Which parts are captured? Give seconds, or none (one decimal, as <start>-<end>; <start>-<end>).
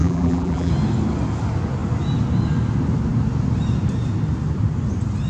0.7-5.3